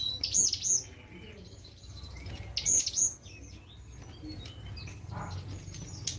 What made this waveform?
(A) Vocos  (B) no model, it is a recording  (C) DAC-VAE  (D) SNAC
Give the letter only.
B